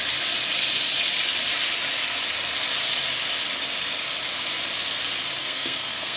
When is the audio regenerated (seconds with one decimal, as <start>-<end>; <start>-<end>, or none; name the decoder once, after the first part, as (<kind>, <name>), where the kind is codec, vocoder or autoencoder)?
5.4-6.2 (codec, SNAC)